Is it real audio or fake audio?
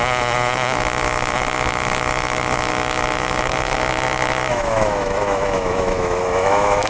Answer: fake